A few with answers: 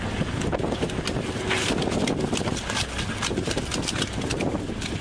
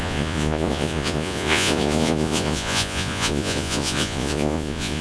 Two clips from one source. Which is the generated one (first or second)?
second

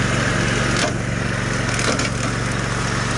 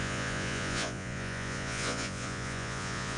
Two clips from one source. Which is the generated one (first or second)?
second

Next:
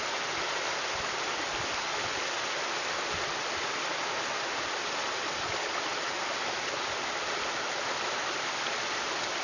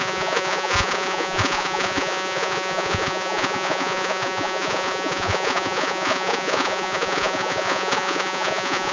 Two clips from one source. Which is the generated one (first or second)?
second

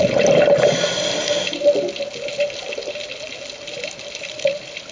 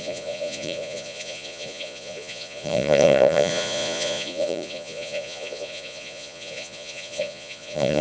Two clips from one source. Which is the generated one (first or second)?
second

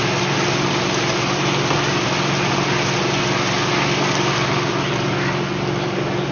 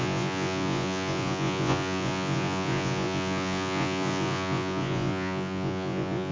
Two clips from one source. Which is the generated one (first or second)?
second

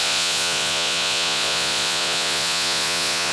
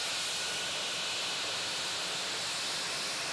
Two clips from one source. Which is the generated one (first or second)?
first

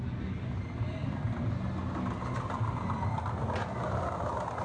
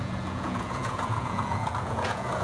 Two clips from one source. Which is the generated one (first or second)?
second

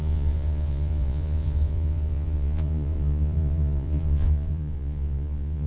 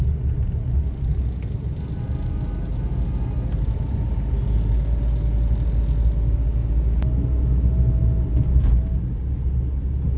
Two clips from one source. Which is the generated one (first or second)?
first